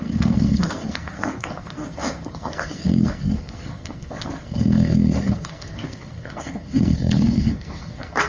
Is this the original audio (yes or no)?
no